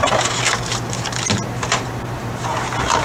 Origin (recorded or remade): recorded